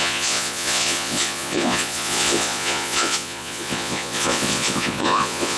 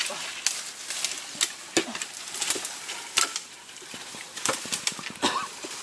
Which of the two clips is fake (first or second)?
first